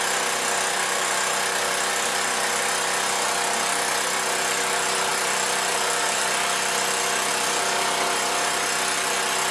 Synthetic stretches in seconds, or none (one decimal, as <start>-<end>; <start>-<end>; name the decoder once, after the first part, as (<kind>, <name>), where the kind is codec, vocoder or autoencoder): none